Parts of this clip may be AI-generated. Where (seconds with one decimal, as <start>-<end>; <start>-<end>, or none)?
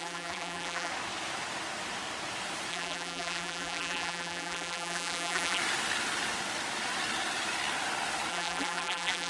0.0-0.9; 2.7-5.6; 8.3-9.3